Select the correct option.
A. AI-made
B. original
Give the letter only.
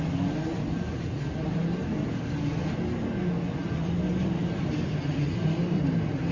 B